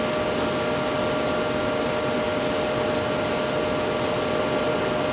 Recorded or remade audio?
recorded